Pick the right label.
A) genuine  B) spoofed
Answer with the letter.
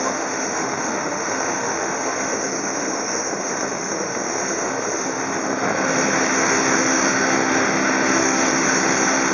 B